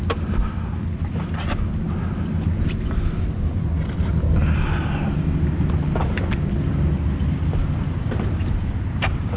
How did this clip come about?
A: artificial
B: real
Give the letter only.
B